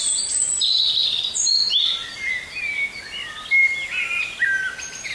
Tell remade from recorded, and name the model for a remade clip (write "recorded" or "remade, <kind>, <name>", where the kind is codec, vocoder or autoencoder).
recorded